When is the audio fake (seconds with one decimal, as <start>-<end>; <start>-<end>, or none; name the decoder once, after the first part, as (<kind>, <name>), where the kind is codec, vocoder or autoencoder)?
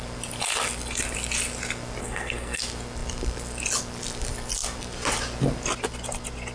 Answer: 2.0-2.6 (codec, SNAC)